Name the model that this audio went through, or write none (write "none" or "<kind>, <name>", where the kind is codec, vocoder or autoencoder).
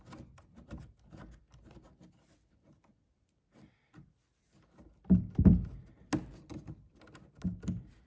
none